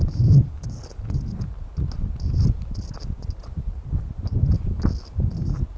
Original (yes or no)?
yes